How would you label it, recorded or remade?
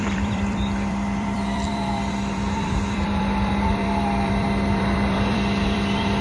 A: remade